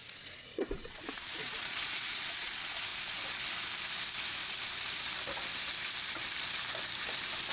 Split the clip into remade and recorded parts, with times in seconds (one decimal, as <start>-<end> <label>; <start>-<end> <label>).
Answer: 0.0-2.9 remade; 2.9-7.5 recorded